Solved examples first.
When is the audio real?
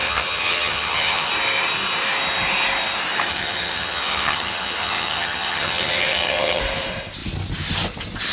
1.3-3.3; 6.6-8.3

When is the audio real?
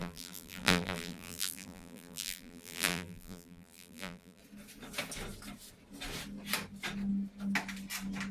4.4-8.3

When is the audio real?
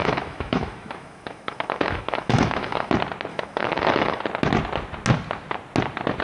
2.9-3.3; 4.2-6.2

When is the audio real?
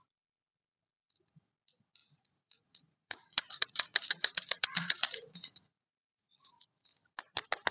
0.0-2.0; 6.6-7.7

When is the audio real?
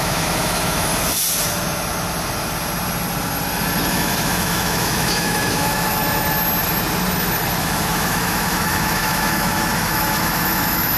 0.9-3.9; 6.0-7.6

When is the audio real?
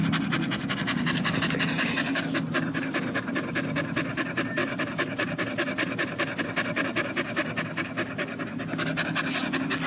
0.0-4.6; 6.4-9.9